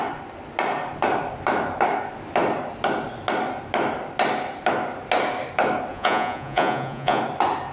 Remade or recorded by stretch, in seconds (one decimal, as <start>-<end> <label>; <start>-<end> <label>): 0.0-5.9 recorded; 5.9-7.2 remade; 7.2-7.7 recorded